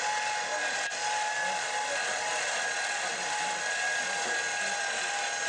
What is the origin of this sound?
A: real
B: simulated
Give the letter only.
A